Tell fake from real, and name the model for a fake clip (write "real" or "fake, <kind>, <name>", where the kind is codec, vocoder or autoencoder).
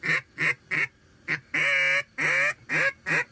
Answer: real